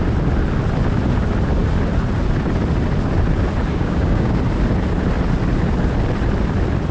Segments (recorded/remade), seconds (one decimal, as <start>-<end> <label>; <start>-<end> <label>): 0.0-3.7 recorded; 3.7-4.4 remade; 4.4-6.9 recorded